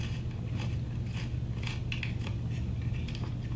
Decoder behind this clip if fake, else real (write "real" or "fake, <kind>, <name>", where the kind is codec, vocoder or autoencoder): real